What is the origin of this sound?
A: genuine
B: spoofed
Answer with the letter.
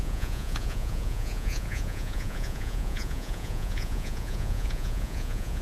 B